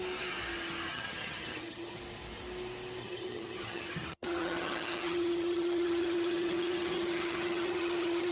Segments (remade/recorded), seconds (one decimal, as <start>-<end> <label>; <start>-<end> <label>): 0.0-0.9 recorded; 0.9-2.0 remade; 2.0-3.0 recorded; 3.0-8.3 remade